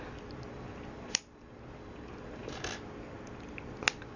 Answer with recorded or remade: recorded